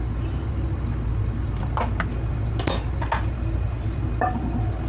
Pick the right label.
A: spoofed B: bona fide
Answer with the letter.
B